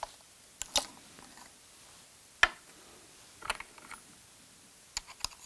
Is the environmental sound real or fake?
real